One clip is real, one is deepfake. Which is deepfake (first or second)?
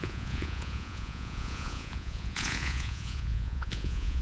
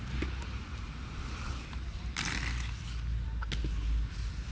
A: first